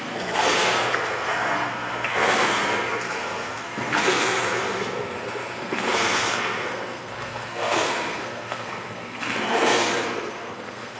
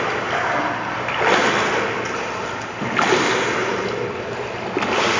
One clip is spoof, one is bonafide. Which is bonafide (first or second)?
second